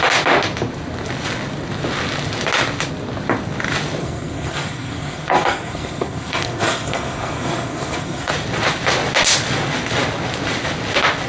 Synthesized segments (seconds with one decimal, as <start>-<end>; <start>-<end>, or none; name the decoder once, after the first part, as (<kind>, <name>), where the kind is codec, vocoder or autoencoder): 4.0-8.3 (codec, SNAC)

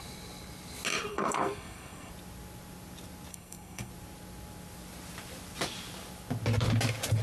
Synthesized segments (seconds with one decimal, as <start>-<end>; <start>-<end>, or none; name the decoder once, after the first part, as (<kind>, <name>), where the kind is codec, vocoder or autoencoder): 1.1-2.1 (codec, SNAC); 3.3-3.9